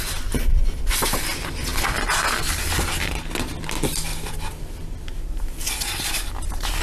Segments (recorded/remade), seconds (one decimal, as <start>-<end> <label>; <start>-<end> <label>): 0.0-1.7 recorded; 1.7-2.4 remade; 2.4-4.1 recorded; 4.1-6.3 remade; 6.3-6.8 recorded